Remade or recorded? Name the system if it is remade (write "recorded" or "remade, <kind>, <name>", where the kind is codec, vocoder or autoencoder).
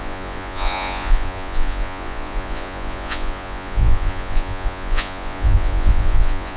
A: remade, vocoder, Vocos